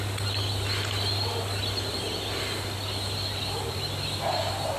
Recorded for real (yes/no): yes